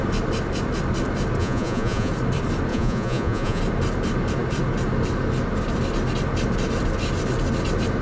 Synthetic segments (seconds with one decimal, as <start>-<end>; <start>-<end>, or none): 1.4-2.1; 2.7-3.6